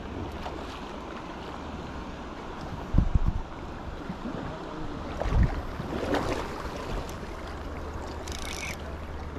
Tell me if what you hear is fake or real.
real